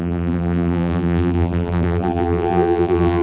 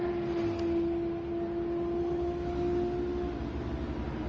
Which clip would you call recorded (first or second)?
second